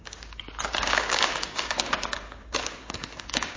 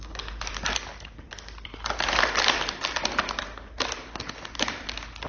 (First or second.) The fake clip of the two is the first